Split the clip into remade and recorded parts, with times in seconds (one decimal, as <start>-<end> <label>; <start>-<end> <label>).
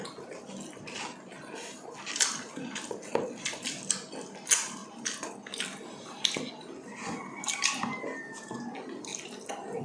0.0-9.8 recorded